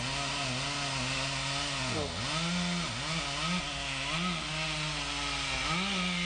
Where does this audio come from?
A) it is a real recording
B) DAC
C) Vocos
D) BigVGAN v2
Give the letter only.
A